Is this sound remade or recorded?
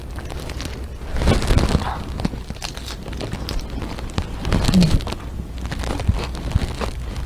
recorded